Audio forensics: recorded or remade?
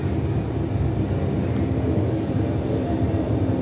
recorded